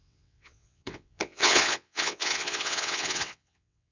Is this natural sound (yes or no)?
no